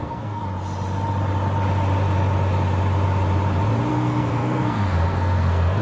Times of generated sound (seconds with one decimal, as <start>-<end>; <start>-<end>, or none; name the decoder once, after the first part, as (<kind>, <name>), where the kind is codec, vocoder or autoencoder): 0.0-0.4 (codec, SNAC); 3.9-5.8